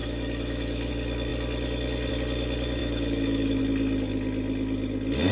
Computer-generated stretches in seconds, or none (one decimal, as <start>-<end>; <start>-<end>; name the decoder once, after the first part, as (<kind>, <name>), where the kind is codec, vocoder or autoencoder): 0.0-0.9 (autoencoder, DAC-VAE); 2.8-3.6